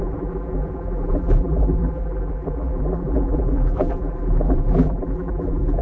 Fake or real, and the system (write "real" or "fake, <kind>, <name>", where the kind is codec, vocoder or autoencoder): fake, vocoder, BigVGAN v2